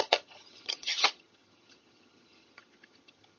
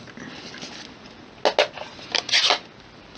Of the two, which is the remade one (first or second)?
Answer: first